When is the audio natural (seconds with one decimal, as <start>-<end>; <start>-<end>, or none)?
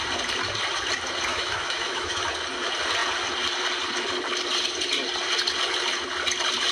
0.0-1.3; 2.3-6.7